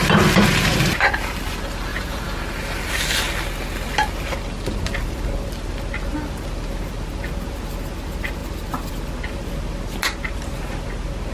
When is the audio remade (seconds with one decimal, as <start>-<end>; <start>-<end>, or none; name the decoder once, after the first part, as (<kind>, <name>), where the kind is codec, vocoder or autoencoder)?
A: 1.9-2.4 (vocoder, Vocos)